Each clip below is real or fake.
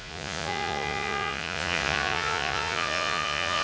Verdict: fake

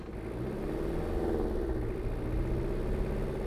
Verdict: real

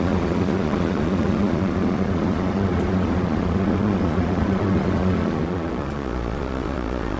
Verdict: fake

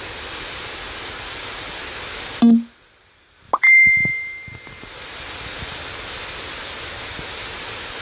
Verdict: real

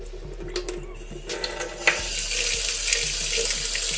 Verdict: real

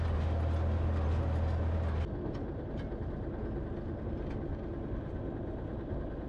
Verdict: real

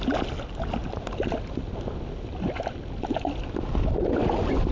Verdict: real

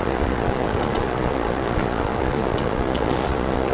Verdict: fake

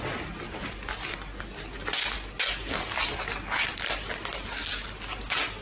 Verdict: real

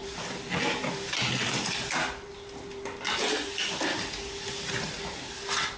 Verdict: real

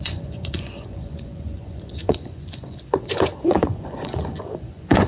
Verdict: fake